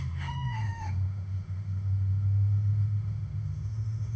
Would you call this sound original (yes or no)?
no